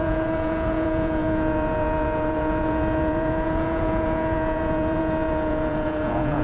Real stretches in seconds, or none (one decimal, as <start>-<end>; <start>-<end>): none